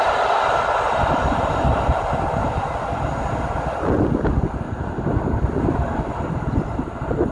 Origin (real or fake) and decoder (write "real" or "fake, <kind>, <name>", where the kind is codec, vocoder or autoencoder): real